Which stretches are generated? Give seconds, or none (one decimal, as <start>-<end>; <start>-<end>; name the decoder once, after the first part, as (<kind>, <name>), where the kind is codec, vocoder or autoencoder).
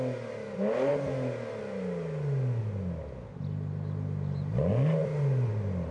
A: none